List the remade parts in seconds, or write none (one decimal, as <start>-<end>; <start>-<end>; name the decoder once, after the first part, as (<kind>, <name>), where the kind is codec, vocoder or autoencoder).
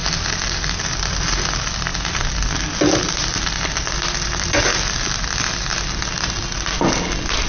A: none